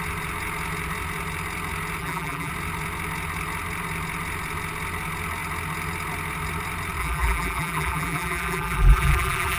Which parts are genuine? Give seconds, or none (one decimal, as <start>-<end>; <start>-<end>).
0.0-2.0; 2.5-7.0